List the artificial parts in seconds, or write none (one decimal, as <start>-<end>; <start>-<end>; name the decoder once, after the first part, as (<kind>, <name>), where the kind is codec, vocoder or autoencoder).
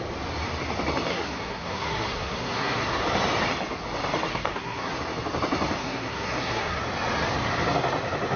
1.1-3.0 (codec, SNAC); 4.3-4.9; 5.8-6.8